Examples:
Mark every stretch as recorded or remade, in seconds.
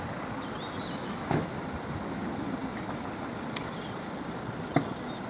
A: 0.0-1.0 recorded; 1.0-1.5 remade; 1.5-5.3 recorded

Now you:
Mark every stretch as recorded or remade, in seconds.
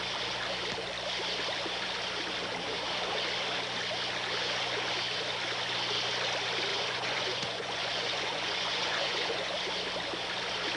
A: 0.0-6.7 recorded; 6.7-9.5 remade; 9.5-10.8 recorded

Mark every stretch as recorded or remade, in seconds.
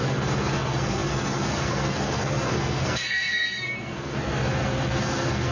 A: 0.0-5.5 remade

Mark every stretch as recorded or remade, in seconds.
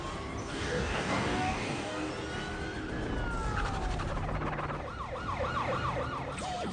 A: 0.0-0.4 recorded; 0.4-2.1 remade; 2.1-6.7 recorded